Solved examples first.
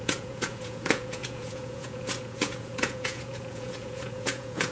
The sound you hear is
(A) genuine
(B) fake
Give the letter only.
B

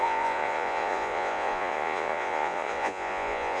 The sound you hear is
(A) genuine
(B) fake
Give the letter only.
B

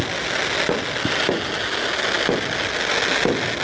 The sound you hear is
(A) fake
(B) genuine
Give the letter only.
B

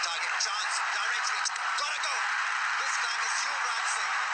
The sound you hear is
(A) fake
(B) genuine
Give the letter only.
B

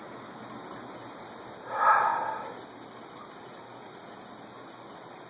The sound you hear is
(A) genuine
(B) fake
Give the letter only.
A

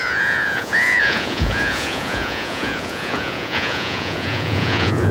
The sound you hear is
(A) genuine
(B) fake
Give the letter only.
B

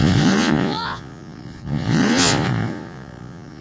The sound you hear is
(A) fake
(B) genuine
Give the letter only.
A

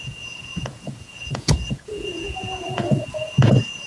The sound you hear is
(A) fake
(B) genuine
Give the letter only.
A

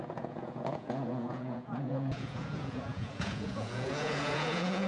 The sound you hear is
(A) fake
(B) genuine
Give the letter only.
A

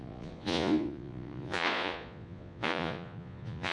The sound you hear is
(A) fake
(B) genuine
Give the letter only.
A